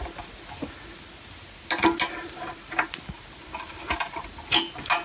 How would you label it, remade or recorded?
recorded